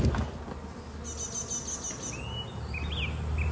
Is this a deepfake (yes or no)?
no